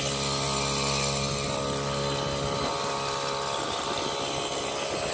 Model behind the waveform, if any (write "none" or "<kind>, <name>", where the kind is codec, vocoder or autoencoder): none